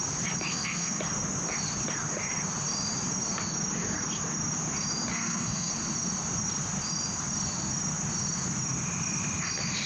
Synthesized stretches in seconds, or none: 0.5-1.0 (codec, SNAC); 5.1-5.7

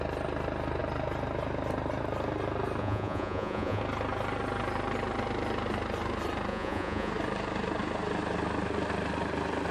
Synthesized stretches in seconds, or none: 2.8-3.8 (vocoder, Vocos); 6.5-7.1

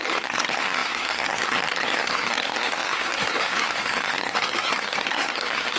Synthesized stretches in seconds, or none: 0.0-5.8 (codec, SNAC)

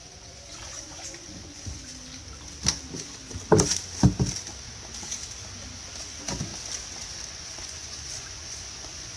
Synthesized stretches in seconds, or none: 0.0-1.9 (vocoder, Vocos); 6.0-6.5; 7.3-9.2

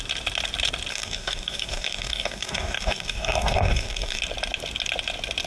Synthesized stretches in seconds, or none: 0.9-4.2 (codec, DAC)